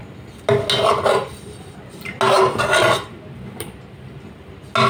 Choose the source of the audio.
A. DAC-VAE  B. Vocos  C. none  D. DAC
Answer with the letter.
C